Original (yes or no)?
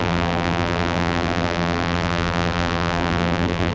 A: no